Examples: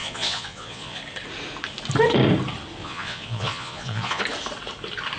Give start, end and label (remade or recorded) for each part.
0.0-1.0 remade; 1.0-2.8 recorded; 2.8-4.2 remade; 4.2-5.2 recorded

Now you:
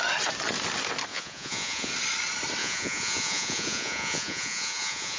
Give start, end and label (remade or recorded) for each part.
0.0-1.1 recorded; 1.1-1.9 remade; 1.9-2.6 recorded; 2.6-5.2 remade

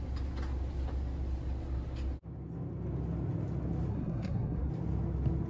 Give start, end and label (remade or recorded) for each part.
0.0-3.9 recorded; 3.9-4.7 remade; 4.7-5.5 recorded

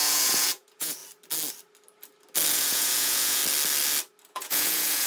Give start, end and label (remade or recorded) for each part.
0.0-1.0 remade; 1.0-2.5 recorded; 2.5-3.4 remade; 3.4-4.3 recorded; 4.3-5.1 remade